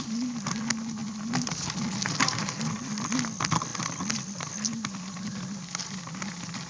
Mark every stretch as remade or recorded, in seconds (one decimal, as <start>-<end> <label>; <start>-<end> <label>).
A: 0.0-6.7 recorded